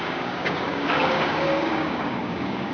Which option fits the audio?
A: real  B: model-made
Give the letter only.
B